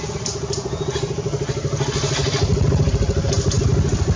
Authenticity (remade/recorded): recorded